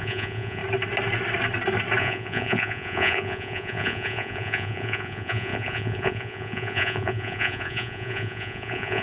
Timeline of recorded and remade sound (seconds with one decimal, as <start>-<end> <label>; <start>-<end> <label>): 0.0-0.6 remade; 0.6-2.0 recorded; 2.0-9.0 remade